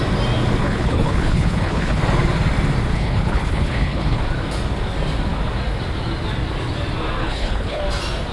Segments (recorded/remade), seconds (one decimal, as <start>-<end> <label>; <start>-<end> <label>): 0.0-0.6 recorded; 0.6-2.0 remade; 2.0-2.9 recorded; 2.9-4.2 remade; 4.2-7.2 recorded; 7.2-7.8 remade; 7.8-8.3 recorded